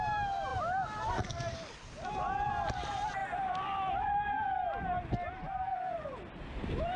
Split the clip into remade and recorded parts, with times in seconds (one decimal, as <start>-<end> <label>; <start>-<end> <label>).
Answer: 0.0-7.0 recorded